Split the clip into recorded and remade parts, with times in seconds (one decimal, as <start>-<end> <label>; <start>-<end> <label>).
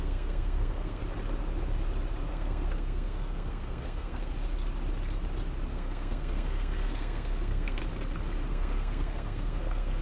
0.0-1.0 remade; 1.0-2.3 recorded; 2.3-4.3 remade; 4.3-5.7 recorded; 5.7-7.8 remade; 7.8-8.5 recorded; 8.5-10.0 remade